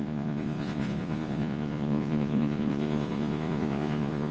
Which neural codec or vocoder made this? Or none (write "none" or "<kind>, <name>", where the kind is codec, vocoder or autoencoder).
vocoder, Vocos